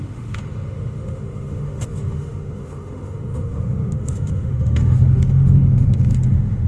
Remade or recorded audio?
remade